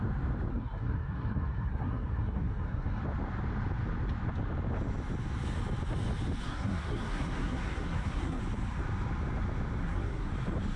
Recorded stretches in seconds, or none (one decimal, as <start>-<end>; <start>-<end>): 0.0-0.5; 3.0-6.4; 8.4-9.8; 10.3-10.8